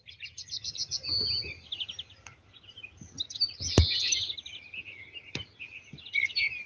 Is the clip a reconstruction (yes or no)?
no